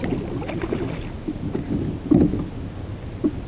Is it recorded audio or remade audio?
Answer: recorded